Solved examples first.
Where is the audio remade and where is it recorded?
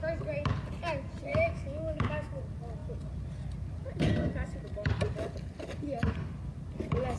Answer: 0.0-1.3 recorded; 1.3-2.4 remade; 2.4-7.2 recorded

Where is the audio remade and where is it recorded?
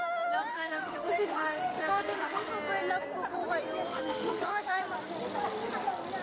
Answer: 0.0-0.5 recorded; 0.5-2.5 remade; 2.5-3.9 recorded; 3.9-4.8 remade; 4.8-6.2 recorded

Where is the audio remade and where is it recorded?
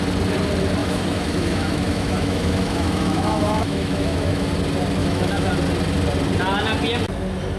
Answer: 0.0-0.8 recorded; 0.8-4.5 remade; 4.5-5.0 recorded; 5.0-5.5 remade; 5.5-7.6 recorded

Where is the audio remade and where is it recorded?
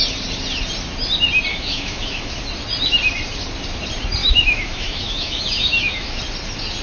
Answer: 0.0-1.5 recorded; 1.5-2.3 remade; 2.3-4.2 recorded; 4.2-6.2 remade; 6.2-6.8 recorded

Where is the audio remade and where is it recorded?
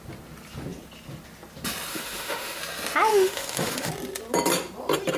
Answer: 0.0-1.9 recorded; 1.9-2.6 remade; 2.6-3.1 recorded; 3.1-3.9 remade; 3.9-5.2 recorded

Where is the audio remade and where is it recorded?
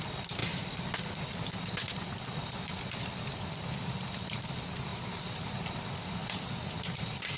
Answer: 0.0-7.4 recorded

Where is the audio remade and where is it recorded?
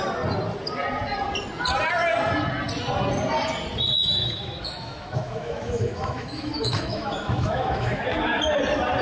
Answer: 0.0-4.1 recorded; 4.1-8.0 remade; 8.0-9.0 recorded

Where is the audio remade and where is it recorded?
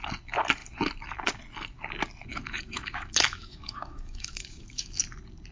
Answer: 0.0-2.3 recorded; 2.3-5.0 remade; 5.0-5.5 recorded